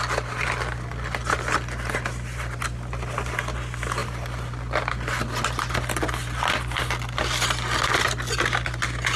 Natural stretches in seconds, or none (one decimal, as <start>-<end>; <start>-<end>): 0.0-9.2